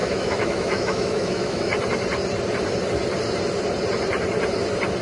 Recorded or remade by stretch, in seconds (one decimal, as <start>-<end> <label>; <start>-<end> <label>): 0.0-1.7 remade; 1.7-5.0 recorded